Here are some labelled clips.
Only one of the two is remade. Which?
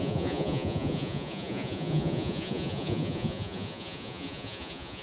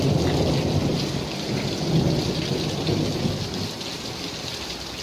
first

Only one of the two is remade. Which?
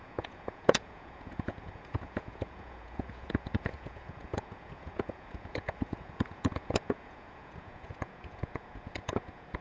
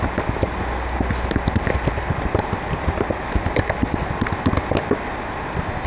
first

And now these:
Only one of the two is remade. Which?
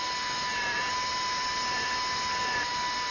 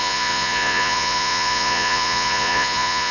second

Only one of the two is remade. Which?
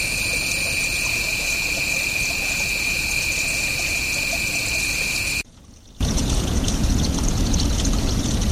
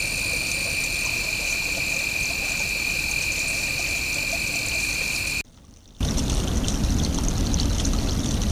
first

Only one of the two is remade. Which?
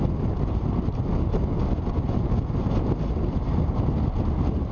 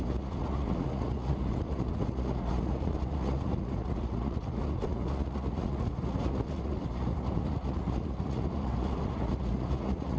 second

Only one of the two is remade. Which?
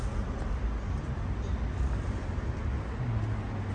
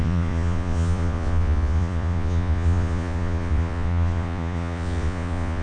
second